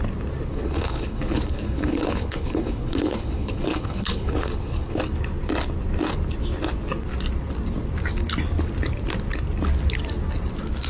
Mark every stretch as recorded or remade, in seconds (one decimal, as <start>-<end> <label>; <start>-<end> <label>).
0.0-0.5 recorded; 0.5-5.0 remade; 5.0-10.9 recorded